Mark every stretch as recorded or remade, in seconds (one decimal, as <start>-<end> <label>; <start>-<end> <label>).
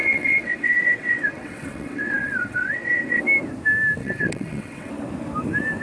0.0-3.2 remade; 3.2-4.0 recorded; 4.0-4.9 remade; 4.9-5.8 recorded